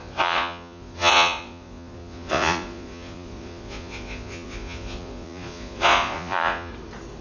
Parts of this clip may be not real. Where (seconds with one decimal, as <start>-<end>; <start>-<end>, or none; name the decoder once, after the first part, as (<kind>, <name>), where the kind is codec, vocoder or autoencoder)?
0.0-6.7 (vocoder, Vocos)